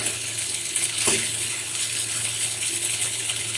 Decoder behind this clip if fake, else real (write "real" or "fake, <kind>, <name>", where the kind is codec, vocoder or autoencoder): fake, codec, HILCodec